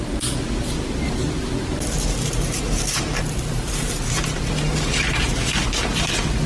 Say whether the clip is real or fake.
real